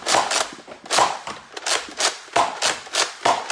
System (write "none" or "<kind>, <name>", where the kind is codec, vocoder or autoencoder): none